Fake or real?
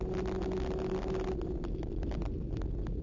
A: real